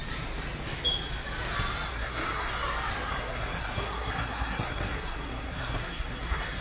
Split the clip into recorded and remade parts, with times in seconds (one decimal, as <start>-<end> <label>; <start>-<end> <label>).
0.0-1.9 recorded; 1.9-2.5 remade; 2.5-3.1 recorded; 3.1-6.6 remade